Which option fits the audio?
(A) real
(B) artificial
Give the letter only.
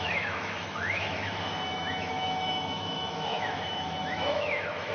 B